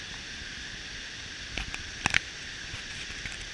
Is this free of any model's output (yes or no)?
no